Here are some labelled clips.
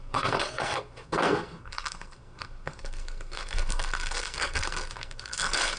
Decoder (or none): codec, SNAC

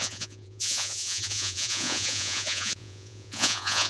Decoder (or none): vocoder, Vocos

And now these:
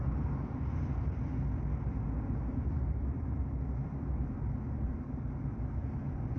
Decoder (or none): none